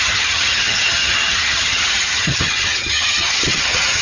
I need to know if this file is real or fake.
fake